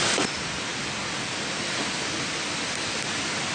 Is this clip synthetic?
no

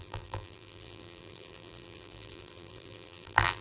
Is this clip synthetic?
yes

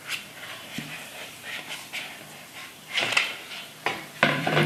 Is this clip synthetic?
yes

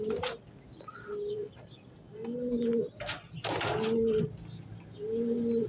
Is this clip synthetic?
no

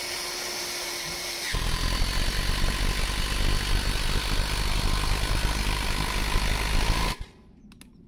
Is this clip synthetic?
no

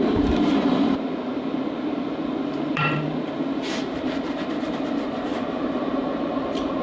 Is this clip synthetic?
yes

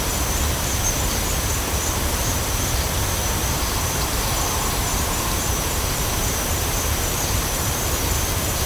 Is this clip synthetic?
yes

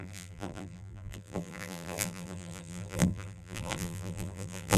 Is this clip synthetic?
yes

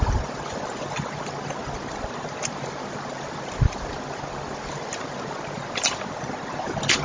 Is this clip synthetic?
no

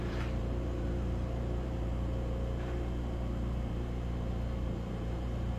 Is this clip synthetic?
yes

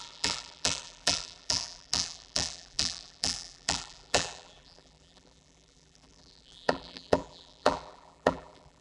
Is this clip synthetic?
yes